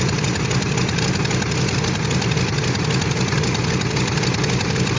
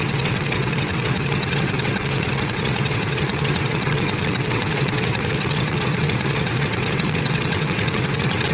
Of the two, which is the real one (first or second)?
first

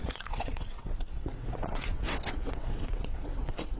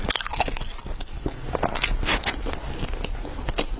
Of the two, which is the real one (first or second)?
second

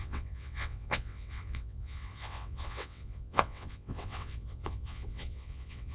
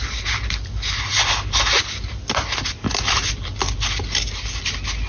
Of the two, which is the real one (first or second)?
second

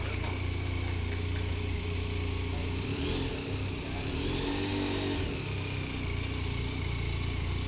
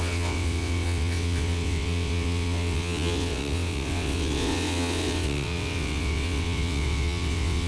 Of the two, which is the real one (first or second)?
first